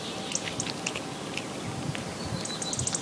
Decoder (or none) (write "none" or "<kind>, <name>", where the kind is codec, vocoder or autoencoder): none